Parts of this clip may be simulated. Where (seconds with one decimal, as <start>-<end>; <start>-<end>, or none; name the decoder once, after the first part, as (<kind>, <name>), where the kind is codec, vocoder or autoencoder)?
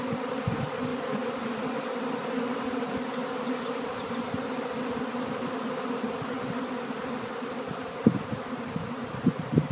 none